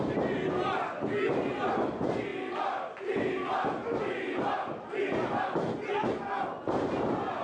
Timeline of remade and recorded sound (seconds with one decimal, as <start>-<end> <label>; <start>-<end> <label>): 0.0-7.4 recorded

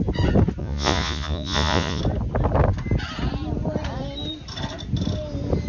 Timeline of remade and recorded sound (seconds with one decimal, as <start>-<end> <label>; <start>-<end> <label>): 0.0-0.6 recorded; 0.6-2.0 remade; 2.0-5.7 recorded

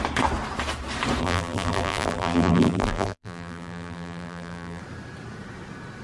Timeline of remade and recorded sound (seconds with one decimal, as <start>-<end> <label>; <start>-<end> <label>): 0.0-1.2 recorded; 1.2-4.8 remade; 4.8-6.0 recorded

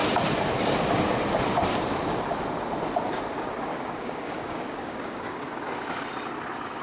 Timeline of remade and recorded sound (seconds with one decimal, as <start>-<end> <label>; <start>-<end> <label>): 0.0-3.7 recorded; 3.7-5.4 remade; 5.4-6.8 recorded